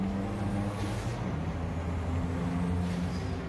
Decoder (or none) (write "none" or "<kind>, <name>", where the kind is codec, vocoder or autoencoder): none